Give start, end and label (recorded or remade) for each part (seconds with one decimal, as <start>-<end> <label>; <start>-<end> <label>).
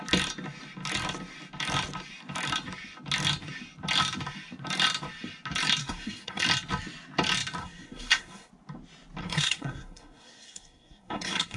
0.0-5.8 recorded; 5.8-6.4 remade; 6.4-7.6 recorded; 7.6-8.5 remade; 8.5-9.2 recorded; 9.2-11.6 remade